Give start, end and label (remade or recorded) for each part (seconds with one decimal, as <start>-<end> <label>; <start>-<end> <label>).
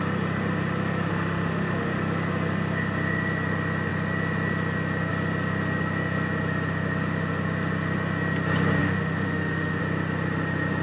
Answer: 0.0-1.1 recorded; 1.1-2.0 remade; 2.0-8.8 recorded; 8.8-9.8 remade; 9.8-10.8 recorded